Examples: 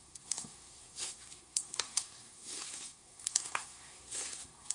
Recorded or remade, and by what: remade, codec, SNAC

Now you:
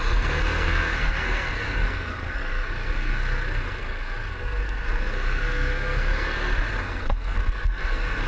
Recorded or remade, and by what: remade, codec, SNAC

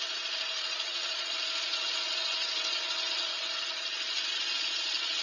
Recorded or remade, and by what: remade, vocoder, Vocos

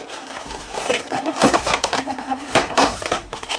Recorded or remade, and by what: remade, codec, SNAC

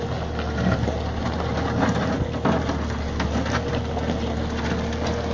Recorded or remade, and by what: recorded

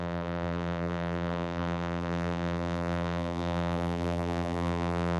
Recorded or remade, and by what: remade, vocoder, BigVGAN v2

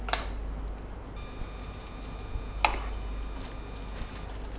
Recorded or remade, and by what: recorded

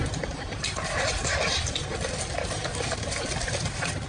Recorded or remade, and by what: recorded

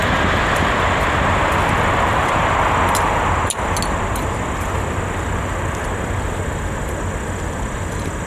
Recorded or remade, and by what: recorded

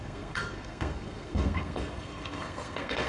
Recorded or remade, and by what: remade, codec, SNAC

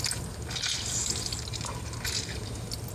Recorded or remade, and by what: recorded